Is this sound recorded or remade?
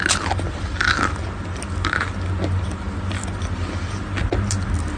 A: recorded